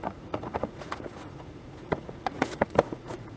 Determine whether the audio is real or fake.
fake